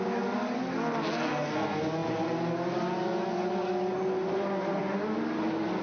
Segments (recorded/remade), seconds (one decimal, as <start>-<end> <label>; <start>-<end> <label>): 0.0-5.8 recorded